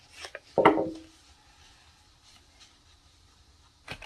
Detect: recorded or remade recorded